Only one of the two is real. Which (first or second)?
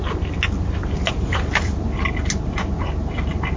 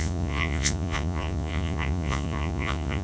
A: first